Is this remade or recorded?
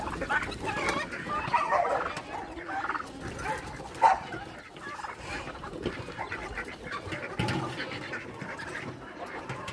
remade